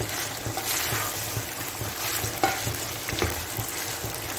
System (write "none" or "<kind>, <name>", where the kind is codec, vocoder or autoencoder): none